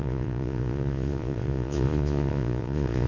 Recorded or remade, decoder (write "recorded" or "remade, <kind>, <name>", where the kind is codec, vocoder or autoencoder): remade, vocoder, Vocos